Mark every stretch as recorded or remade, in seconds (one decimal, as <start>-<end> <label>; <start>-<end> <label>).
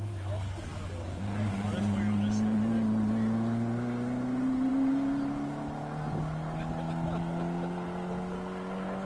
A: 0.0-9.1 recorded